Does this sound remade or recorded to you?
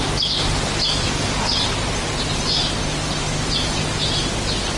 recorded